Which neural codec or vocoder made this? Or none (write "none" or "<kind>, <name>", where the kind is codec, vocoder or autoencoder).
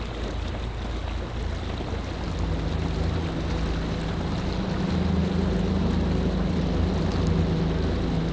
none